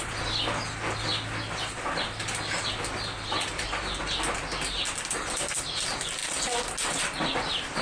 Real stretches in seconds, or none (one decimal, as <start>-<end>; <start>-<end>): 0.0-7.8